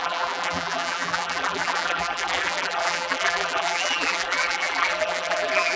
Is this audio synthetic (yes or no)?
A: yes